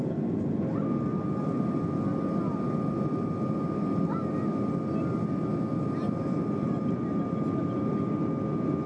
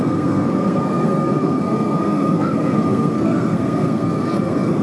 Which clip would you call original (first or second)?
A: first